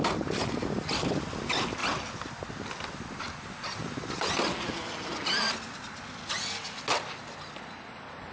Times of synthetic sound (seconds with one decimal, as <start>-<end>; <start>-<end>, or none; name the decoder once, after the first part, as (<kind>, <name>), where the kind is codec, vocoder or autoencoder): none